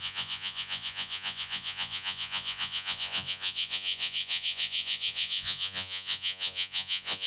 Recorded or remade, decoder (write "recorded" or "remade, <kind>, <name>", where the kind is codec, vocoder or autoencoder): remade, vocoder, Vocos